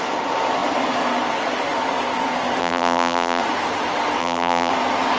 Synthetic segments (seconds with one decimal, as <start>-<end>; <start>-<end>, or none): 2.6-3.4; 4.2-4.7